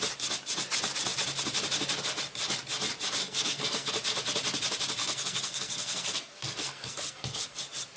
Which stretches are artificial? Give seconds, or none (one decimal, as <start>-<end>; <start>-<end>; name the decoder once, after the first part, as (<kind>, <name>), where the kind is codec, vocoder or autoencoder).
3.2-3.9 (codec, SNAC); 5.0-7.6